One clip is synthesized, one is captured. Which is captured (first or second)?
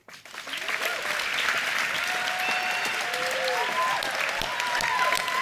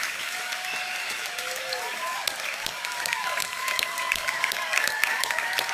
first